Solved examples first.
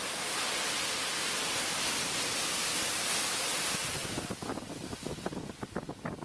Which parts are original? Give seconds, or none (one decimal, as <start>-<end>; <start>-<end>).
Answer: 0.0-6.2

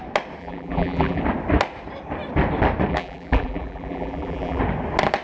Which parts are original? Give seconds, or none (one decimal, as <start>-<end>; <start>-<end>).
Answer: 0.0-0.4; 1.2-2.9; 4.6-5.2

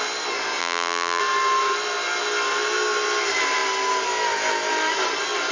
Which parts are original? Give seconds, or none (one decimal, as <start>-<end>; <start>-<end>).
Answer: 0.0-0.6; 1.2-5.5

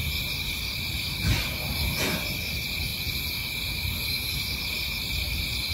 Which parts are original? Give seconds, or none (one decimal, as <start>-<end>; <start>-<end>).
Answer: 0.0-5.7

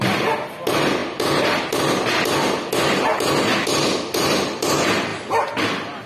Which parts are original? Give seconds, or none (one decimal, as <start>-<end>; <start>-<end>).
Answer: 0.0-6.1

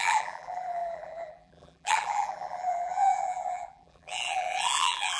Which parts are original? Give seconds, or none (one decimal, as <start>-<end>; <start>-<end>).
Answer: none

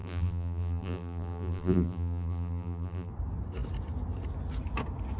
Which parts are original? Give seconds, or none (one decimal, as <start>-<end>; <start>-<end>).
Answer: 3.1-5.2

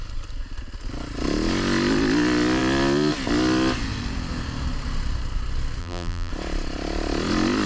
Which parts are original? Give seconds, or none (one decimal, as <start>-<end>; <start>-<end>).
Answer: 0.0-5.8; 6.3-7.7